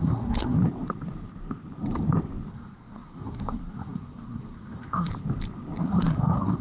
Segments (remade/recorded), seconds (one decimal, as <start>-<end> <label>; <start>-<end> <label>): 0.0-0.6 remade; 0.6-2.5 recorded; 2.5-5.1 remade; 5.1-5.8 recorded; 5.8-6.6 remade